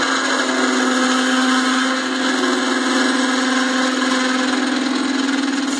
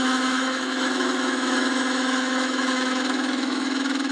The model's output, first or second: second